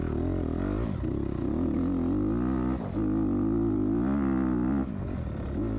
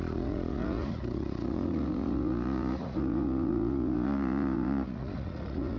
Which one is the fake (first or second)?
second